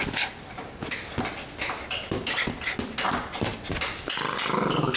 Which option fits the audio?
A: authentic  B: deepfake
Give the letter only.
A